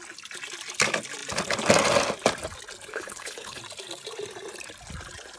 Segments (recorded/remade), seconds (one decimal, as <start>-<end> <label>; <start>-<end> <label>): 0.0-2.9 recorded; 2.9-3.6 remade; 3.6-5.4 recorded